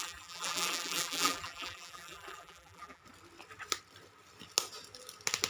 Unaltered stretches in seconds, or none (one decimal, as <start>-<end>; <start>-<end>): 3.0-5.5